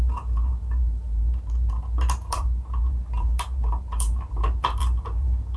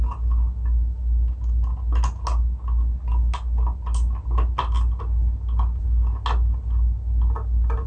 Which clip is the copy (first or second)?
first